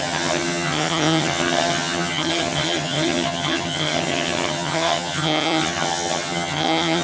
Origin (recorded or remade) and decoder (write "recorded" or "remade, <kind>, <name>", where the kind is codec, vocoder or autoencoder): remade, vocoder, HiFi-GAN